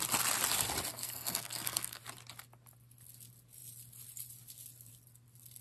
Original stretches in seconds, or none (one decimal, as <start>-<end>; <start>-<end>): 0.0-0.9; 2.0-5.6